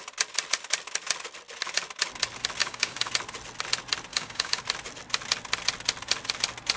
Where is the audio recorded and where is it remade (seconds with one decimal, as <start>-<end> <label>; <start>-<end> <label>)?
0.0-2.6 recorded; 2.6-3.1 remade; 3.1-4.1 recorded; 4.1-4.6 remade; 4.6-6.8 recorded